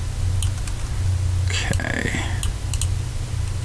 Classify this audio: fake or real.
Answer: real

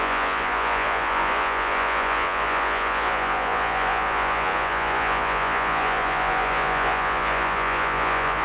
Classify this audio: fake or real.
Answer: fake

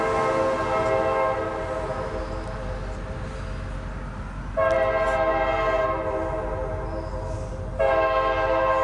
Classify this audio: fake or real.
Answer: real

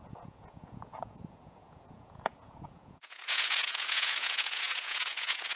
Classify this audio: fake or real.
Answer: fake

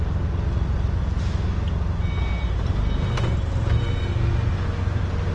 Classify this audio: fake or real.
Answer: real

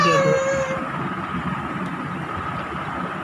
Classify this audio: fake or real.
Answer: real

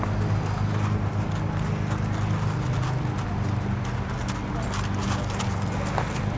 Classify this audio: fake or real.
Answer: real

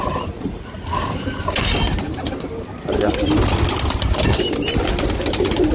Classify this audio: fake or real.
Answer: real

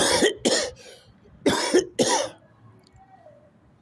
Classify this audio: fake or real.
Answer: real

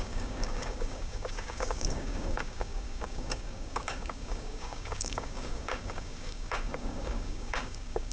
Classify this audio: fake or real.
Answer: fake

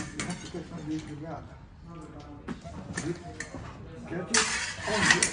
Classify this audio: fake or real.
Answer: real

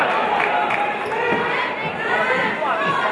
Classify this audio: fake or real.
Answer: real